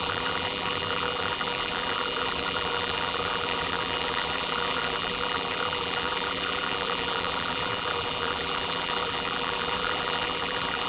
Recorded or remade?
remade